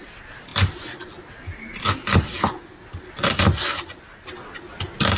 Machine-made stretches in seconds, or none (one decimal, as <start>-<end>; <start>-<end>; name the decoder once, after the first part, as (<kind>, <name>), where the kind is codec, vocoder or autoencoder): none